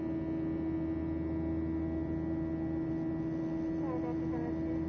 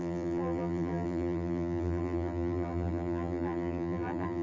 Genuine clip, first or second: first